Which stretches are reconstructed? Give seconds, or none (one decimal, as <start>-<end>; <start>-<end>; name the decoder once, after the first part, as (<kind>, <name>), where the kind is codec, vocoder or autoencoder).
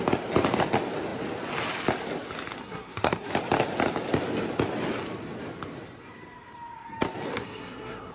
2.6-3.3 (codec, SNAC); 7.3-8.1